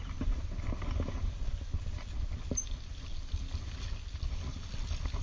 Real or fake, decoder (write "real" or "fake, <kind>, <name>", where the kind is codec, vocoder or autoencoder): real